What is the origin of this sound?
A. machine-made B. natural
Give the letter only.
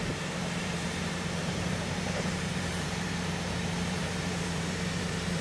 A